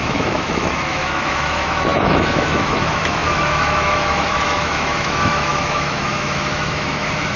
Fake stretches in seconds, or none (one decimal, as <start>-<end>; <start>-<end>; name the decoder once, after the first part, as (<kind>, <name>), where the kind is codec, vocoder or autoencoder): 0.0-7.4 (autoencoder, DAC-VAE)